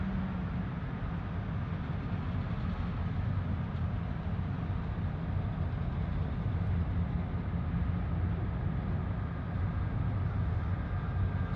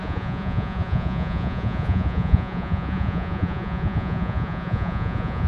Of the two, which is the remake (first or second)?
second